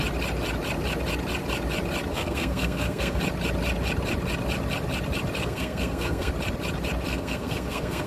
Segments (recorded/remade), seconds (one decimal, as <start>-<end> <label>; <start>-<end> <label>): 0.0-2.1 recorded; 2.1-3.2 remade; 3.2-5.4 recorded; 5.4-6.3 remade; 6.3-7.1 recorded; 7.1-8.1 remade